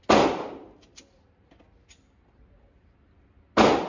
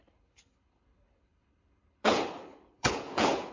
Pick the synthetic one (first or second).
second